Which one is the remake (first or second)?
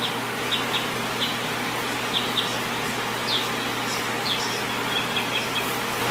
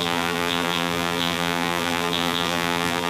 second